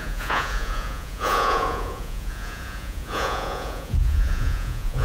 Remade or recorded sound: remade